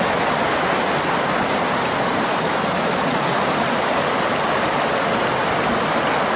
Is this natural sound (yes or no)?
yes